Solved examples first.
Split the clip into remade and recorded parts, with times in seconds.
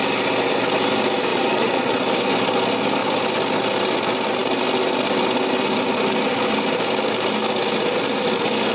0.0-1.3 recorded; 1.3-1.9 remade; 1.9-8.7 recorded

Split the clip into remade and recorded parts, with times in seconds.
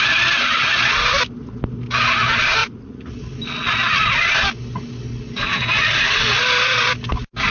0.0-2.6 recorded; 2.6-3.1 remade; 3.1-7.5 recorded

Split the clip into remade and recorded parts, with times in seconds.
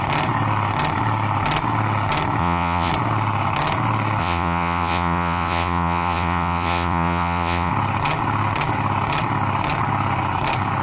0.0-2.4 recorded; 2.4-2.9 remade; 2.9-4.2 recorded; 4.2-7.7 remade; 7.7-10.8 recorded